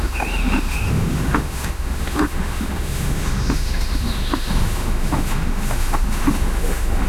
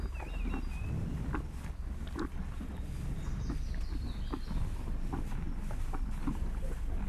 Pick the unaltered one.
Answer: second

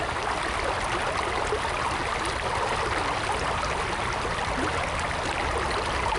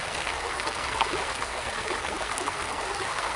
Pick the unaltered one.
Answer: first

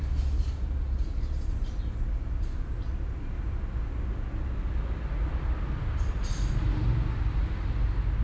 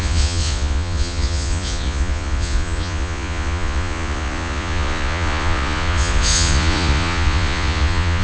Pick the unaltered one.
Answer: first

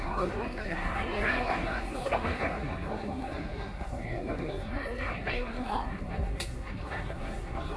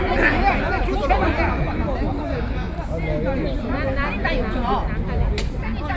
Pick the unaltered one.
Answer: second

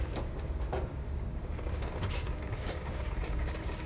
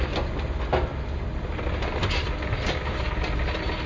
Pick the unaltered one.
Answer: second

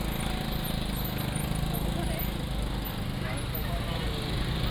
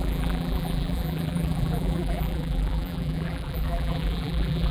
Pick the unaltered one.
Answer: first